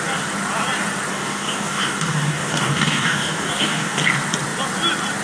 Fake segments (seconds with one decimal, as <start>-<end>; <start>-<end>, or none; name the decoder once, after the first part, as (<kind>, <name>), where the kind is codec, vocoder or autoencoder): 1.1-4.0 (codec, DAC)